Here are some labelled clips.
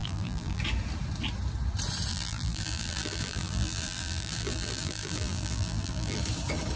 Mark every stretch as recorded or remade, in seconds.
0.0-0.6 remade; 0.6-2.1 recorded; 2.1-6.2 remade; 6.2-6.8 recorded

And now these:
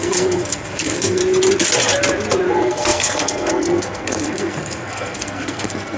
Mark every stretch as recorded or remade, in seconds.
0.0-1.2 remade; 1.2-2.5 recorded; 2.5-6.0 remade

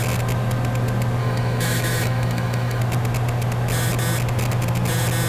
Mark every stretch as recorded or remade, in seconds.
0.0-1.2 recorded; 1.2-2.8 remade; 2.8-5.3 recorded

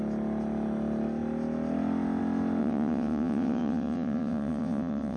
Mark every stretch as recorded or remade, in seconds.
0.0-2.6 recorded; 2.6-5.2 remade

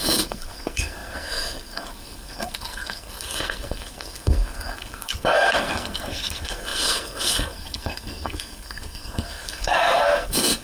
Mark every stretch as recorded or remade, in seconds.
0.0-10.6 remade

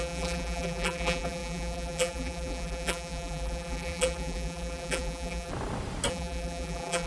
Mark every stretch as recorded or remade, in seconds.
0.0-5.5 remade; 5.5-6.1 recorded; 6.1-7.1 remade

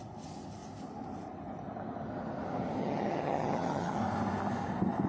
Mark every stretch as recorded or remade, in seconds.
0.0-2.8 recorded; 2.8-4.0 remade; 4.0-5.1 recorded